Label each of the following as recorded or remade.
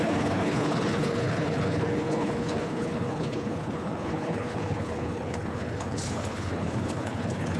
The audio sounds remade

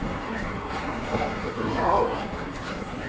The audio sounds remade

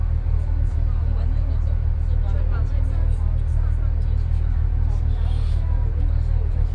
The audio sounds recorded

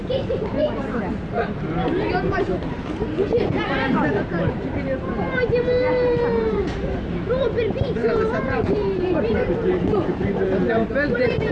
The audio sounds remade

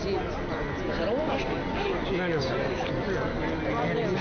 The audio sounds recorded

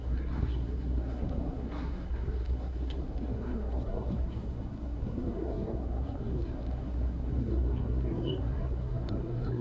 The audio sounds remade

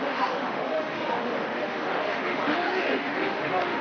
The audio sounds remade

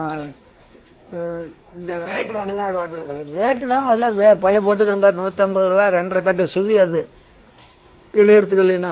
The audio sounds remade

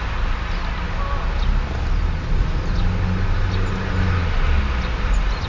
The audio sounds recorded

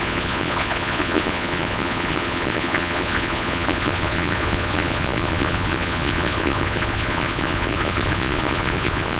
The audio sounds remade